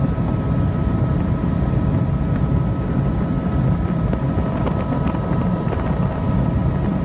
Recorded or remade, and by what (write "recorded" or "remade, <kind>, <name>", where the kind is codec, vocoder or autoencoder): recorded